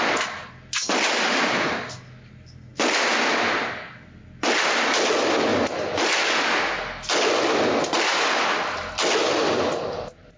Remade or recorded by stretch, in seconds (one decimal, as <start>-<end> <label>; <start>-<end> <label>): 0.0-9.2 recorded; 9.2-10.4 remade